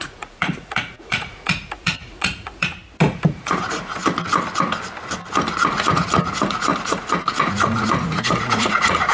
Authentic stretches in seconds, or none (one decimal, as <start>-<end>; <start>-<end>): 2.8-3.3; 4.0-5.7